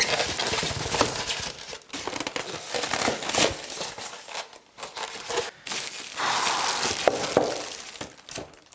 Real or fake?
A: real